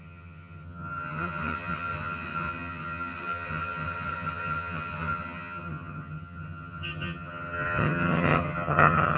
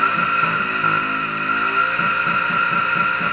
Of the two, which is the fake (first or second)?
first